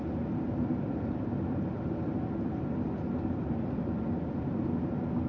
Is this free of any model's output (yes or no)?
yes